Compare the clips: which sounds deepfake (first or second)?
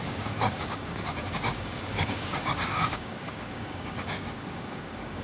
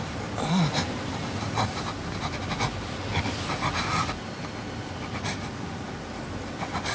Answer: first